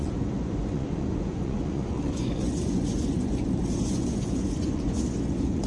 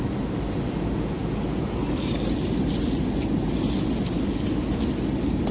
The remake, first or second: first